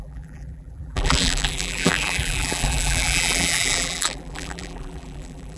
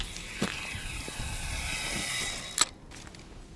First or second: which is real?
second